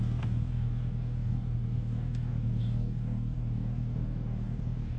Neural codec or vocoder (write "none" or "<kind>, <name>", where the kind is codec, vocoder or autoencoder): codec, DAC